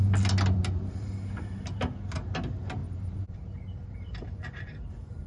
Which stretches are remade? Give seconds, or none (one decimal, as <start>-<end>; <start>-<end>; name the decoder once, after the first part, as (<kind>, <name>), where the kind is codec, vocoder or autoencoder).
2.8-5.3 (vocoder, BigVGAN v2)